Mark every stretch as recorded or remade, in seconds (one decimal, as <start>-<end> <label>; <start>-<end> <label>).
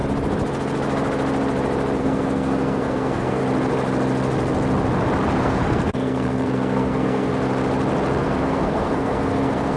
0.0-2.0 recorded; 2.0-3.4 remade; 3.4-5.4 recorded; 5.4-7.3 remade; 7.3-8.2 recorded; 8.2-9.8 remade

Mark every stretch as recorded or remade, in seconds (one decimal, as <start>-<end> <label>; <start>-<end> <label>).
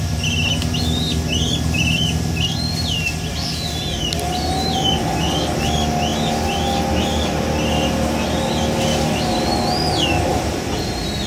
0.0-10.3 recorded; 10.3-10.8 remade; 10.8-11.3 recorded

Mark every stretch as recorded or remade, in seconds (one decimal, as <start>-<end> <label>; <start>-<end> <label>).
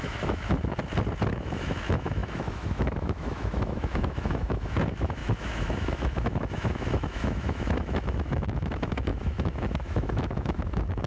0.0-0.8 remade; 0.8-1.3 recorded; 1.3-11.1 remade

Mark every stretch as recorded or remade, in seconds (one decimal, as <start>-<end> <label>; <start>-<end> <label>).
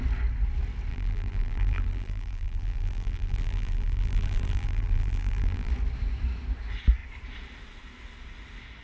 0.0-0.9 recorded; 0.9-5.7 remade; 5.7-8.8 recorded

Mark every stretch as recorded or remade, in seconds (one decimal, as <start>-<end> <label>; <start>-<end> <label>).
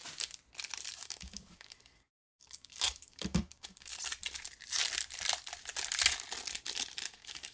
0.0-0.9 recorded; 0.9-3.9 remade; 3.9-7.1 recorded; 7.1-7.5 remade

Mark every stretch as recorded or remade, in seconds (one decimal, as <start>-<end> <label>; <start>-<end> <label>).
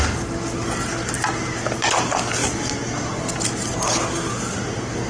0.0-5.1 recorded